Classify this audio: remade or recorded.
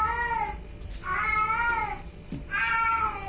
recorded